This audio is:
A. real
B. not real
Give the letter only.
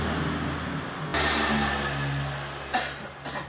A